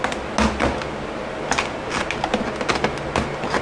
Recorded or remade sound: recorded